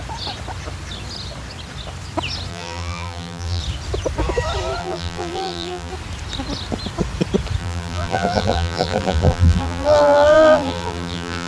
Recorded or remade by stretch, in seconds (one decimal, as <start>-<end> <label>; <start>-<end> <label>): 0.0-2.5 recorded; 2.5-3.6 remade; 3.6-4.8 recorded; 4.8-5.9 remade; 5.9-7.6 recorded; 7.6-11.5 remade